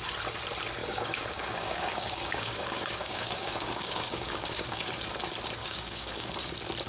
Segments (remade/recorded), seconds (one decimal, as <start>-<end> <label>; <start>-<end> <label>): 0.0-0.8 recorded; 0.8-4.9 remade; 4.9-5.6 recorded; 5.6-6.3 remade; 6.3-6.9 recorded